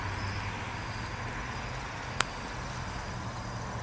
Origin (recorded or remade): recorded